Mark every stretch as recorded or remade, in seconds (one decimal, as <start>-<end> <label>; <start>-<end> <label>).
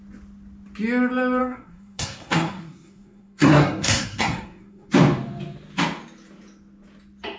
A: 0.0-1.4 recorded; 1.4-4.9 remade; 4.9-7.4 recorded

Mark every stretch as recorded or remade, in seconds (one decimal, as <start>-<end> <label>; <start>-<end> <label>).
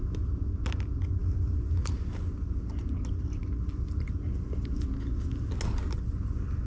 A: 0.0-6.7 recorded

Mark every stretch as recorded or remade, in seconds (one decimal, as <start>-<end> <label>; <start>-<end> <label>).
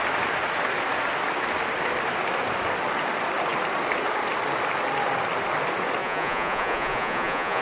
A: 0.0-6.0 recorded; 6.0-7.6 remade